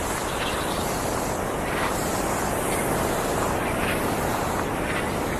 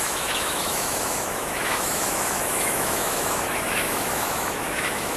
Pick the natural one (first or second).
first